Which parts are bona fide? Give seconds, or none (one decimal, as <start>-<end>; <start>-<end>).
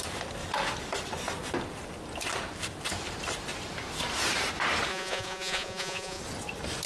0.0-4.9; 6.2-6.9